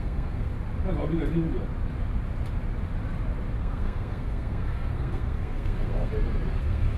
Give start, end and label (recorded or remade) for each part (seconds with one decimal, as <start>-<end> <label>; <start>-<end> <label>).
0.0-0.5 remade; 0.5-3.6 recorded; 3.6-6.1 remade; 6.1-6.6 recorded; 6.6-7.0 remade